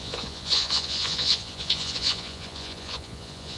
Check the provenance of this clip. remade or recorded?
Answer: remade